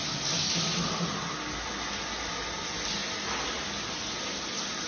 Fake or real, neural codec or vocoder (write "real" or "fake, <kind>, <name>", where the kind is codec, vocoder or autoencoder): real